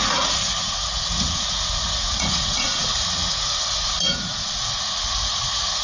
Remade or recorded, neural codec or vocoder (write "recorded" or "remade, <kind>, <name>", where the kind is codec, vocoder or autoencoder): remade, vocoder, Vocos